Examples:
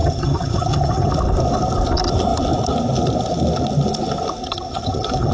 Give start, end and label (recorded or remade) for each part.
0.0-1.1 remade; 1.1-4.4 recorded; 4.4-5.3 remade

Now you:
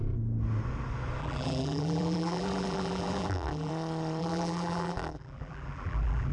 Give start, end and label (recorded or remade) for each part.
0.0-1.2 recorded; 1.2-3.7 remade; 3.7-4.2 recorded; 4.2-6.3 remade